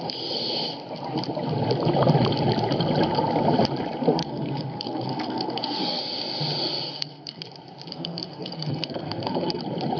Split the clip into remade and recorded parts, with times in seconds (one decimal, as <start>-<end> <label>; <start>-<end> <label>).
0.0-4.2 recorded; 4.2-6.0 remade; 6.0-6.9 recorded; 6.9-7.4 remade; 7.4-7.9 recorded; 7.9-9.6 remade; 9.6-10.0 recorded

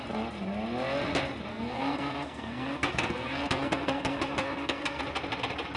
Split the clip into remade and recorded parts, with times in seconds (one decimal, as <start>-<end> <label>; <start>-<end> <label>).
0.0-1.5 recorded; 1.5-5.0 remade; 5.0-5.8 recorded

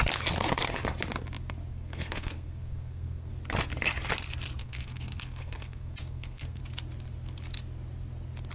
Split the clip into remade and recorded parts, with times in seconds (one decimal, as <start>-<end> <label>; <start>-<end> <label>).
0.0-1.7 recorded; 1.7-3.3 remade; 3.3-4.6 recorded; 4.6-6.6 remade; 6.6-8.5 recorded

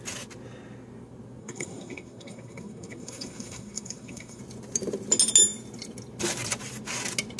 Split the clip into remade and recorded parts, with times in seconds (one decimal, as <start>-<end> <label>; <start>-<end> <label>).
0.0-1.4 recorded; 1.4-4.4 remade; 4.4-7.4 recorded